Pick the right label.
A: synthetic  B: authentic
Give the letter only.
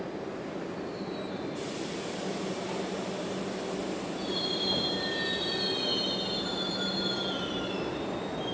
B